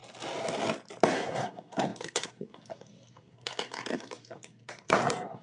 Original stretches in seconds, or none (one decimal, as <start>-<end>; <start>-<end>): 0.0-1.1